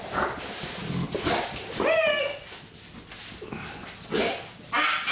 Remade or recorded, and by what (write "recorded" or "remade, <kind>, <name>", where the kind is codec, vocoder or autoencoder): recorded